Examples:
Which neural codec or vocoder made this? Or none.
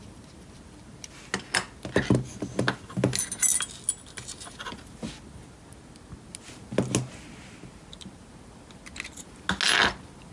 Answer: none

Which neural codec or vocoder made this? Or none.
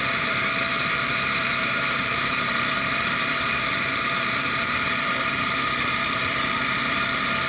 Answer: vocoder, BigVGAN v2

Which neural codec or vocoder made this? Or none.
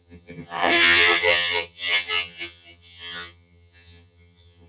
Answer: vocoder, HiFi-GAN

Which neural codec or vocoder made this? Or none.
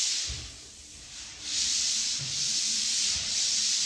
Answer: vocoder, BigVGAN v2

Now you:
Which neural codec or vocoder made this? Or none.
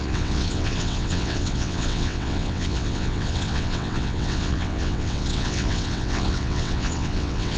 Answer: vocoder, WaveNeXt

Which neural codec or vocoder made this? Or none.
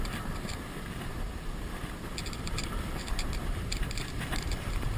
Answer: vocoder, BigVGAN v2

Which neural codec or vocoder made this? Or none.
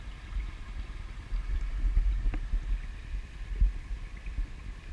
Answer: none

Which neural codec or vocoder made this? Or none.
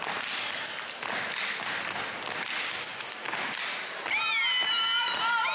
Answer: none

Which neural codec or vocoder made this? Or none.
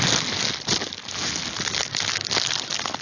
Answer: none